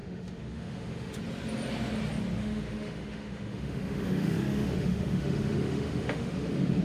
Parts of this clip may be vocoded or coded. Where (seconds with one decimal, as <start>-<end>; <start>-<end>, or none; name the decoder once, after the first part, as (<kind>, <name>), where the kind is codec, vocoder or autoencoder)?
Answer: 0.0-1.2 (autoencoder, DAC-VAE); 2.4-6.8